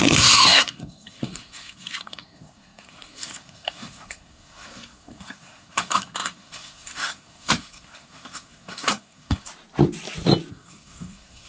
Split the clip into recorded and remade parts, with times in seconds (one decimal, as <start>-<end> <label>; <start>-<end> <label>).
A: 0.0-9.5 remade; 9.5-10.5 recorded; 10.5-11.5 remade